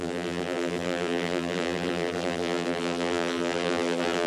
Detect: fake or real fake